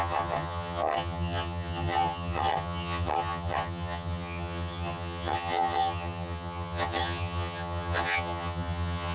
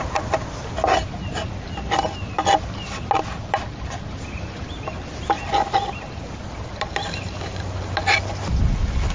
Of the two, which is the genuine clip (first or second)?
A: second